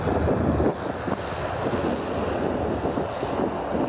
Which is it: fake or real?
real